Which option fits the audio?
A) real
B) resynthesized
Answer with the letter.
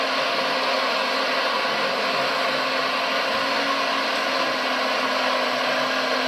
A